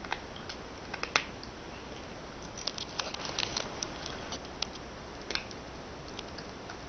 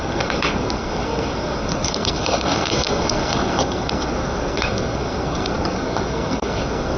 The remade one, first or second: second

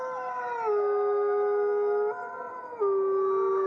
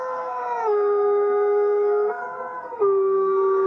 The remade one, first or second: second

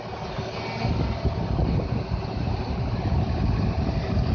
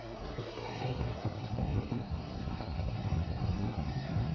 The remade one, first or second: second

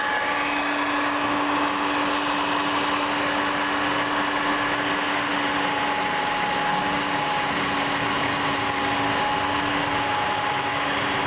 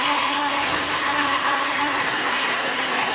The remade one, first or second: second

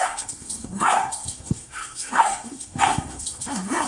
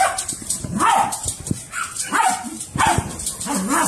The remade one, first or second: first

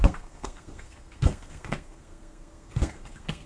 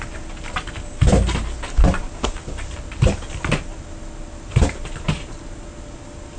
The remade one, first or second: first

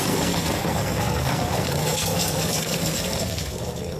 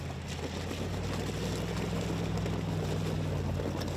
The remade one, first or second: first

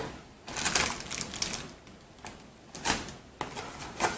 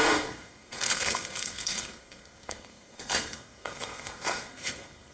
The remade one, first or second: second